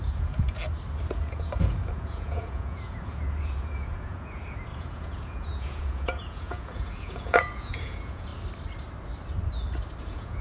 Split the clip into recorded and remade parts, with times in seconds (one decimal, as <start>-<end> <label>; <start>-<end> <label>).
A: 0.0-0.6 remade; 0.6-1.1 recorded; 1.1-8.3 remade; 8.3-10.0 recorded; 10.0-10.4 remade